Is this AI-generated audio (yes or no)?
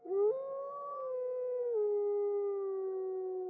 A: no